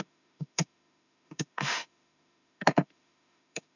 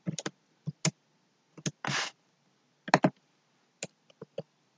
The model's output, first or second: first